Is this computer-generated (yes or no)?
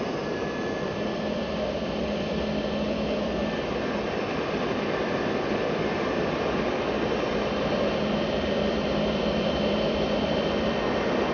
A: yes